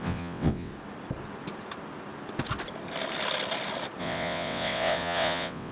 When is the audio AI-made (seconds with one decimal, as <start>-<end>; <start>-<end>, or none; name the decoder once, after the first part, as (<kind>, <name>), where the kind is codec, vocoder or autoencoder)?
0.0-0.7 (vocoder, WaveNeXt); 4.0-5.7